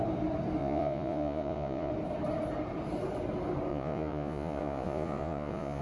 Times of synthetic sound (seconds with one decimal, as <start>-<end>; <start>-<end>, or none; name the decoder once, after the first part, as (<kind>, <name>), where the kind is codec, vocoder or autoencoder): 0.6-1.9 (vocoder, Vocos); 3.7-5.8